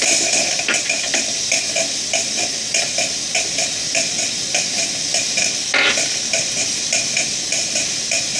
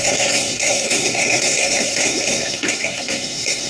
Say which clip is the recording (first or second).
first